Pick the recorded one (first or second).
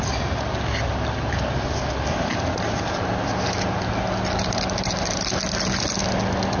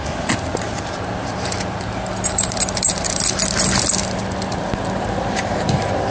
first